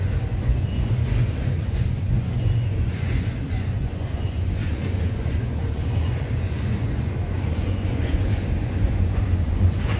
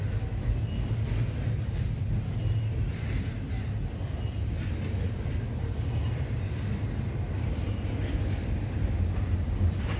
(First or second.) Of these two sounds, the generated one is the first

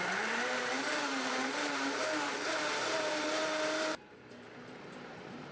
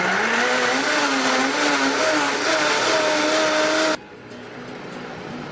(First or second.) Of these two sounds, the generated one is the first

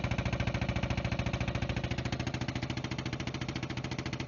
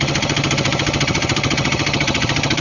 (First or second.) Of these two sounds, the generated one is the second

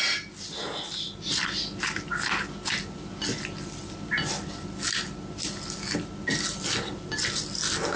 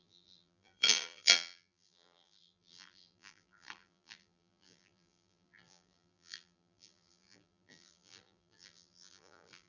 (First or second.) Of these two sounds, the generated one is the second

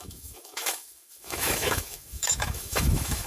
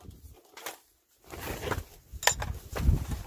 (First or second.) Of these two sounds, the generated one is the first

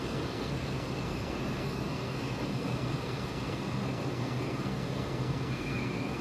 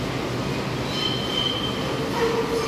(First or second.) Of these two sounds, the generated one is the first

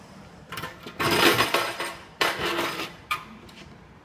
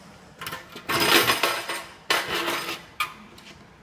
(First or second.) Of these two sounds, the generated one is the first